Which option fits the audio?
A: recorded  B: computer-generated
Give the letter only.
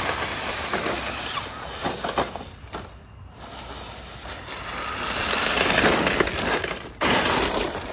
A